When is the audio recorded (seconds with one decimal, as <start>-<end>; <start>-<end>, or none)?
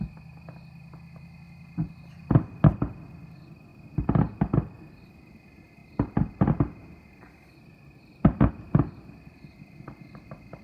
0.0-1.8; 2.5-10.6